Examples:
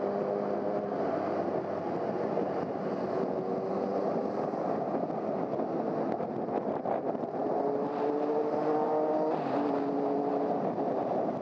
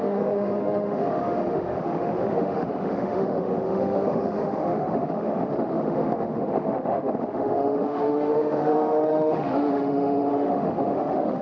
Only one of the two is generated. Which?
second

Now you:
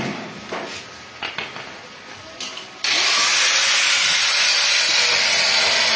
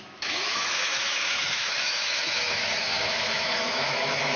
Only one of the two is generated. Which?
second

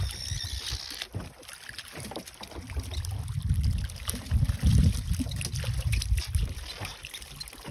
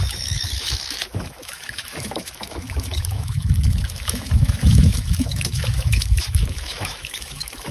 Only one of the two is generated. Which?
second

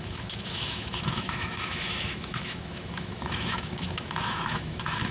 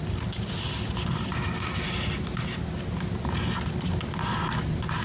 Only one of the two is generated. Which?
first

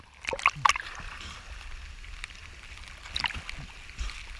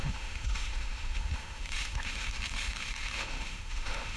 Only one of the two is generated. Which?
second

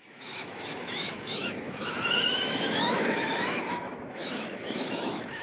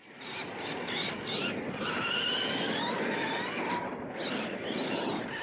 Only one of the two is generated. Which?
first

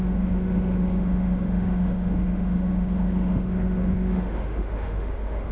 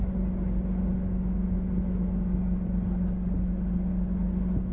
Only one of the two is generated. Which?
first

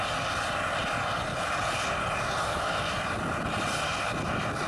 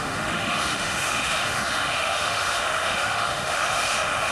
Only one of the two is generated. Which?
second